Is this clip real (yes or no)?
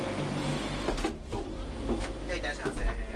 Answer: yes